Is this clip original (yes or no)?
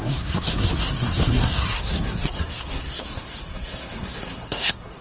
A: no